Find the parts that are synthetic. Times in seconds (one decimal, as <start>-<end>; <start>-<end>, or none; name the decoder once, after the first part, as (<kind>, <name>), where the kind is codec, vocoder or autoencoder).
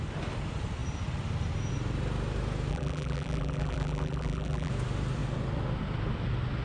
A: 2.7-4.7 (vocoder, BigVGAN v2)